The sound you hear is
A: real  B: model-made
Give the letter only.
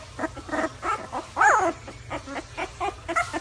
A